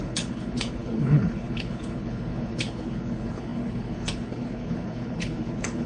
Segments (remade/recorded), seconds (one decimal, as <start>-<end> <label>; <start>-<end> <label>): 0.0-5.9 remade